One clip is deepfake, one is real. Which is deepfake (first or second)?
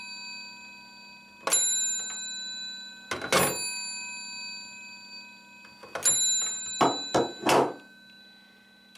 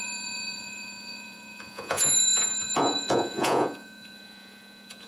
second